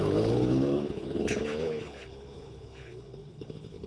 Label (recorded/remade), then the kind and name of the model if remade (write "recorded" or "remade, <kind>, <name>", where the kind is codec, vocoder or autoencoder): remade, codec, HILCodec